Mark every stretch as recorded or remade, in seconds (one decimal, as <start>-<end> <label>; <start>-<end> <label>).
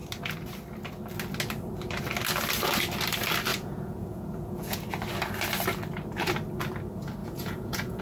0.0-3.5 recorded; 3.5-4.8 remade; 4.8-7.2 recorded; 7.2-8.0 remade